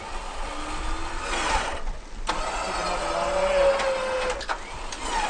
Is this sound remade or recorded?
recorded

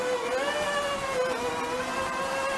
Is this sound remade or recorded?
recorded